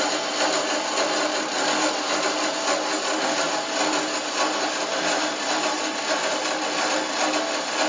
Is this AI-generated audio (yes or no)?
no